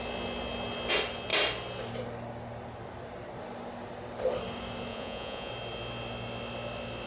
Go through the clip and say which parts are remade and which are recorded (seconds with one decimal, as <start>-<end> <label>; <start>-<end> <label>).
0.0-4.9 recorded; 4.9-5.5 remade; 5.5-7.1 recorded